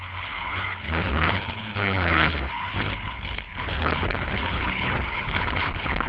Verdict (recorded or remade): remade